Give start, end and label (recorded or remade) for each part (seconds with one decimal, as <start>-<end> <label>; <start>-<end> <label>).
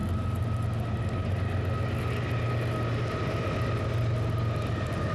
0.0-5.1 recorded